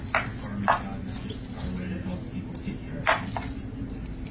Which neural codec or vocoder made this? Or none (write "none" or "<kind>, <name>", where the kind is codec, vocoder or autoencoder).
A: none